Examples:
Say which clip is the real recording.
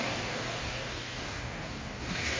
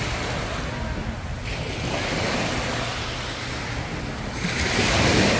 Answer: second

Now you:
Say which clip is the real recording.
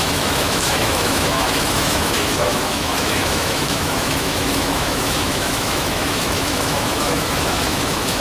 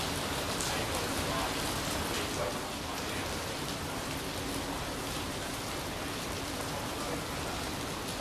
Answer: second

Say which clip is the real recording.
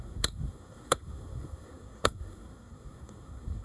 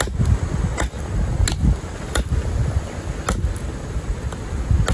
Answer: second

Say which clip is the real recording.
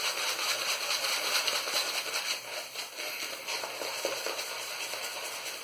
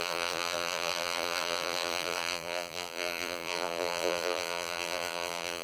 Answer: first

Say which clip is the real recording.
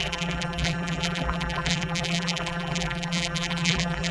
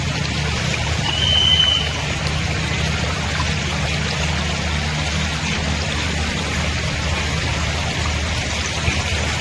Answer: second